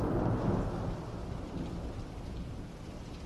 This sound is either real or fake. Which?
fake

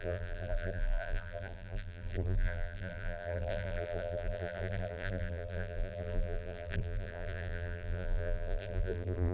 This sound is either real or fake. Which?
fake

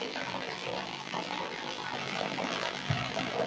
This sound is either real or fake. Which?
fake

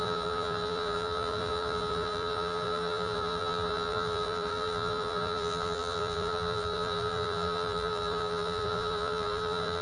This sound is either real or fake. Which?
fake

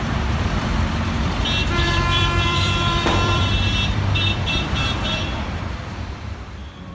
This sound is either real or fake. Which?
fake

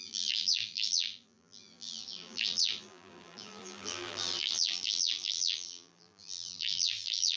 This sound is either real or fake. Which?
fake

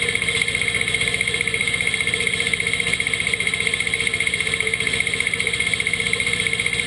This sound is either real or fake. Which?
fake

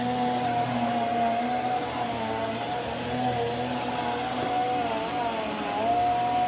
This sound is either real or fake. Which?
real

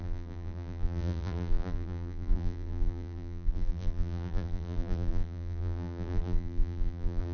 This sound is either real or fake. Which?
fake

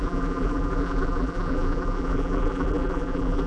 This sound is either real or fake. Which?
fake